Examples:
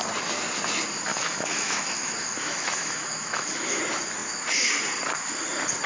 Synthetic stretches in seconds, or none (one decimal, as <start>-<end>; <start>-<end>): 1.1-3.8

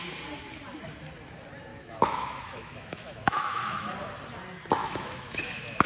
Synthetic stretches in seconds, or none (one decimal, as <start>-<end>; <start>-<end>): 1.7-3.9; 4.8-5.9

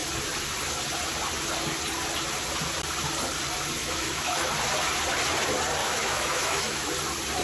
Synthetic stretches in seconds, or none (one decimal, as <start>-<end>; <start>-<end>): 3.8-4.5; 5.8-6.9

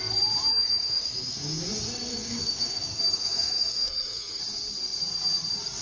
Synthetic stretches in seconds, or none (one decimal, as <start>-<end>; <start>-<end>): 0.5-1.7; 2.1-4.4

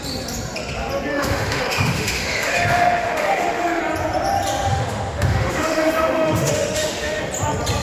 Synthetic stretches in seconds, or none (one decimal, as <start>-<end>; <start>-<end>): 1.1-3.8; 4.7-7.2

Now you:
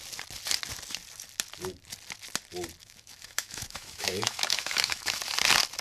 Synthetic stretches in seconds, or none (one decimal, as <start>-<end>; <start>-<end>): 2.8-5.2

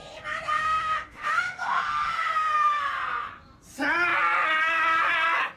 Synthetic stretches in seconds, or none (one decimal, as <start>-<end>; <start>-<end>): 0.6-2.8

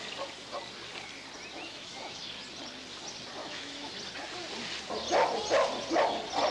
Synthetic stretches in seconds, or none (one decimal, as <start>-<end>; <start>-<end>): 1.5-2.2; 3.4-3.9